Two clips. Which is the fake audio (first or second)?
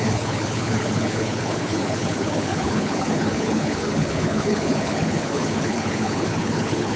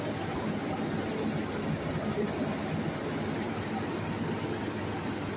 first